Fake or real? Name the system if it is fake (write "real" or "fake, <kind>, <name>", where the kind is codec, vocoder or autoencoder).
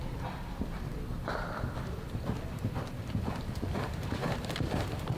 fake, vocoder, BigVGAN v2